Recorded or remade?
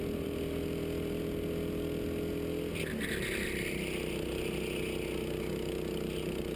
recorded